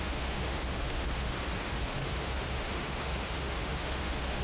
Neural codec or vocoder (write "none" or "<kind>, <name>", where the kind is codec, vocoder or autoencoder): autoencoder, DAC-VAE